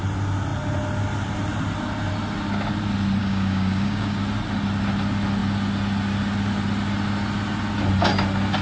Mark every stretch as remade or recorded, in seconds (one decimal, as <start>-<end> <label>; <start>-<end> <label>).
0.0-3.2 recorded; 3.2-4.2 remade; 4.2-8.6 recorded

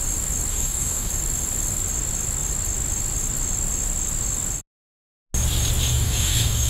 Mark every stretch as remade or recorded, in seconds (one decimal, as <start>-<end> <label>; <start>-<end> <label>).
0.0-0.5 recorded; 0.5-1.1 remade; 1.1-5.9 recorded; 5.9-6.7 remade

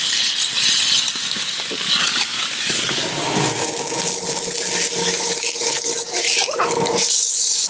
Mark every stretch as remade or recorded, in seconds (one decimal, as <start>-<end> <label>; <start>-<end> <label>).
0.0-1.2 recorded; 1.2-3.2 remade; 3.2-5.0 recorded; 5.0-7.7 remade

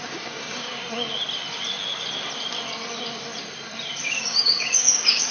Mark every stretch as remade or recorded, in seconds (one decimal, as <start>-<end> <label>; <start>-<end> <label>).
0.0-0.8 remade; 0.8-4.0 recorded; 4.0-5.3 remade

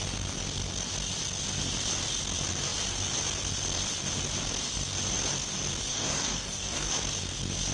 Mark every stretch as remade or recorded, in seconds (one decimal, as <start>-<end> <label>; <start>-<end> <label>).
0.0-5.9 recorded; 5.9-6.9 remade; 6.9-7.7 recorded

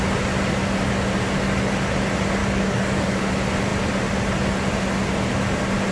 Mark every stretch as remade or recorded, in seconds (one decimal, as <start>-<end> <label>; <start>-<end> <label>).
0.0-2.4 recorded; 2.4-3.3 remade; 3.3-5.9 recorded

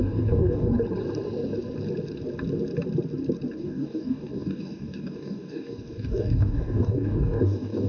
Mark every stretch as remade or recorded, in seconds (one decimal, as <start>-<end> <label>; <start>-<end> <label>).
0.0-0.7 remade; 0.7-3.6 recorded; 3.6-7.9 remade

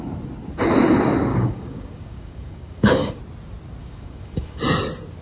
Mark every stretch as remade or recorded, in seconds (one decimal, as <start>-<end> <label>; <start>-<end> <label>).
0.0-1.3 recorded; 1.3-3.2 remade; 3.2-3.8 recorded; 3.8-4.6 remade; 4.6-5.2 recorded